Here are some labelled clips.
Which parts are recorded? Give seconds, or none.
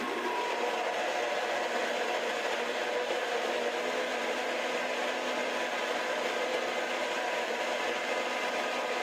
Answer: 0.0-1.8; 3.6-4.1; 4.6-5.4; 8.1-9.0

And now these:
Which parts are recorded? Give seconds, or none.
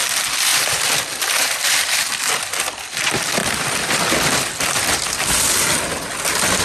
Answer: 0.0-0.5; 2.1-3.4; 5.1-6.6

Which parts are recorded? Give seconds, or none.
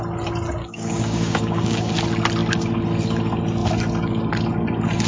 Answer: 0.0-0.6; 1.9-5.1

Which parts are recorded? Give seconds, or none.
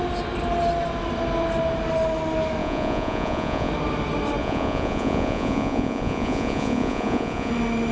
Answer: 0.0-2.6; 3.7-4.4; 7.5-7.9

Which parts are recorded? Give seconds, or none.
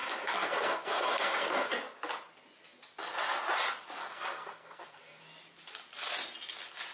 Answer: 1.7-4.0; 5.2-6.9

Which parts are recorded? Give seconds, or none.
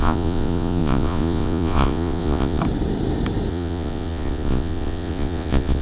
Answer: 2.6-3.5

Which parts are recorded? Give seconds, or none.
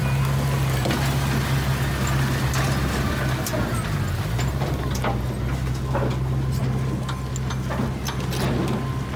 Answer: 0.0-9.2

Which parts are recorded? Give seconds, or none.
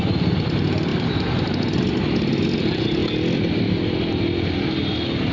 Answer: 0.0-5.3